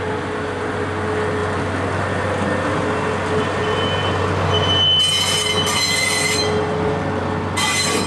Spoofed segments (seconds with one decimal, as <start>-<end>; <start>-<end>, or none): none

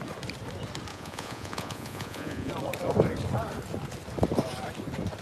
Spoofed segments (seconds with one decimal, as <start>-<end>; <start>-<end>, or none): 0.9-2.5

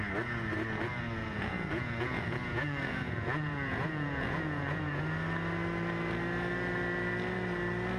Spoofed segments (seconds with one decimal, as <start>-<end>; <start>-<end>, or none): 1.2-5.0

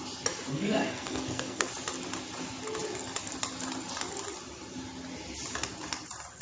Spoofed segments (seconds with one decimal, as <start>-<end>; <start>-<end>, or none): 0.5-1.7

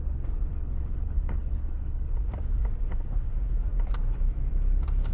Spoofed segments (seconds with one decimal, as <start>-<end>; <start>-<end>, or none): 0.5-2.1